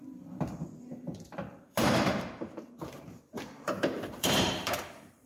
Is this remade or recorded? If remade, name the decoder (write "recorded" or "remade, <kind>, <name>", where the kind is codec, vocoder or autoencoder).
remade, vocoder, BigVGAN v2